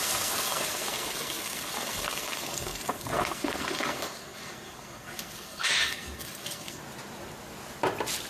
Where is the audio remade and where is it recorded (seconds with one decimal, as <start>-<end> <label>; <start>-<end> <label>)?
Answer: 0.0-6.8 remade; 6.8-8.3 recorded